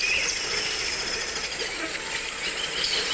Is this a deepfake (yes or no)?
yes